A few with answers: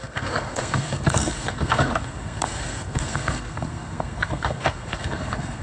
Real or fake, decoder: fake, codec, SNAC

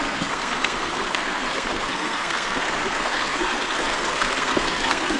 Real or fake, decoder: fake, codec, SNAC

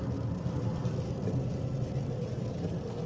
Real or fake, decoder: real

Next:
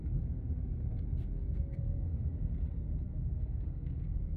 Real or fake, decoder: fake, codec, SNAC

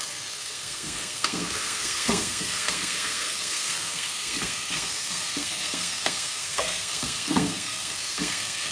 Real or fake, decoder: fake, codec, SNAC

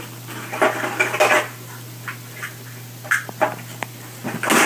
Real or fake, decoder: real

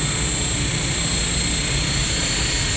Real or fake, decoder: real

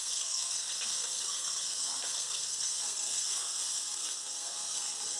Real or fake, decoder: fake, codec, SNAC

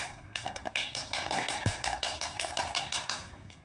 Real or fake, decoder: fake, codec, SNAC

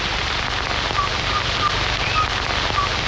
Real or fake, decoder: real